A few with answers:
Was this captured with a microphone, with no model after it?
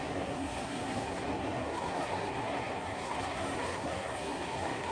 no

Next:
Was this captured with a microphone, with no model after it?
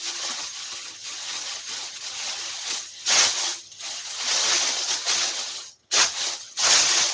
no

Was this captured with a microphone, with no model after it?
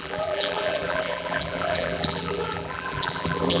no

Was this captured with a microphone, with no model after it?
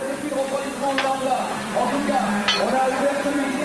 no